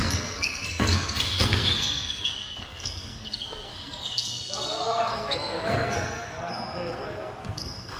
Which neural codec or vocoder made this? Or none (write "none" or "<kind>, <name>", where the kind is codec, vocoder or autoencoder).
codec, SNAC